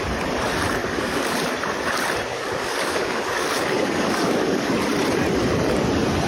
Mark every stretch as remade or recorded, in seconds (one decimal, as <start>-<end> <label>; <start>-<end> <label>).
0.0-0.8 recorded; 0.8-1.4 remade; 1.4-2.3 recorded; 2.3-4.7 remade; 4.7-6.3 recorded